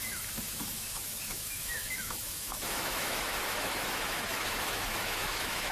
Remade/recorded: remade